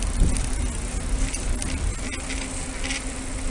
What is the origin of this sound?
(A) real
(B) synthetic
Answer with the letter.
A